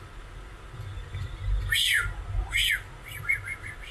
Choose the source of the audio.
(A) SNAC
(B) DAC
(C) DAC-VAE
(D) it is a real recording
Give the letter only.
D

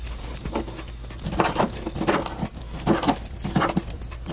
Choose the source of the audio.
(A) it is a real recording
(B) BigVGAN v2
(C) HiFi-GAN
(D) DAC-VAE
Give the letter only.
A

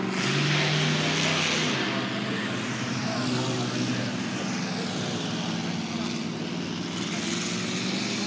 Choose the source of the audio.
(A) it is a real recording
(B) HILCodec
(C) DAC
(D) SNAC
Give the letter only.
A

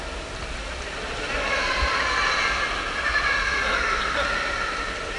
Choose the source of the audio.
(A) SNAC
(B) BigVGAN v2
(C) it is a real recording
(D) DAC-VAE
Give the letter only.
C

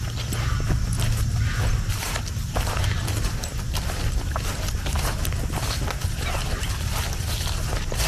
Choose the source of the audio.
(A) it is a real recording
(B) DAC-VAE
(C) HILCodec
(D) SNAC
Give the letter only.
A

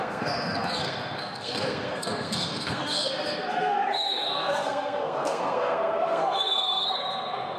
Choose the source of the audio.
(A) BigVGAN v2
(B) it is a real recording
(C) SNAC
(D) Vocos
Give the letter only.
C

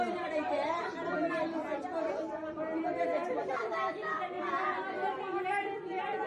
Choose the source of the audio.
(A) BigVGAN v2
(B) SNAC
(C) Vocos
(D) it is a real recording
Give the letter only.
D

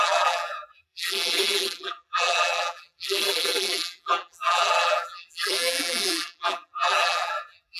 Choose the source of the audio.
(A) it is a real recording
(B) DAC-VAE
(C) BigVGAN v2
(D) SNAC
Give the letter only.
C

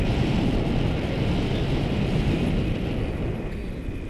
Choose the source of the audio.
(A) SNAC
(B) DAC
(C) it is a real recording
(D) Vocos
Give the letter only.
C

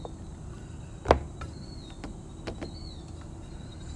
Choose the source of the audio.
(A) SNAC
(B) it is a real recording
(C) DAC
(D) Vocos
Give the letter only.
B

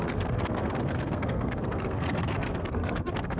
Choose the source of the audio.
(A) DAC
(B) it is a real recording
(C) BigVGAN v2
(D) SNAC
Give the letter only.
D